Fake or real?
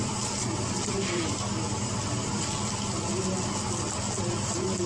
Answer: real